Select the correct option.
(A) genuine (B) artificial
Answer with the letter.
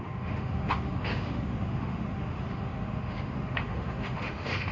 B